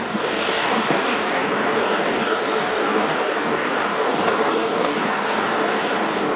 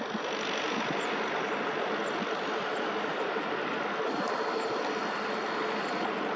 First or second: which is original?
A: second